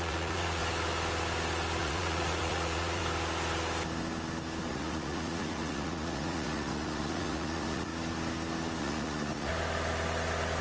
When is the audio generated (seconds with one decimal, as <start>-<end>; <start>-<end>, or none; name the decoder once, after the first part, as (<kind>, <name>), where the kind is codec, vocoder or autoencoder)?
0.0-0.6 (vocoder, Vocos); 1.8-3.0; 4.7-7.9; 8.8-9.5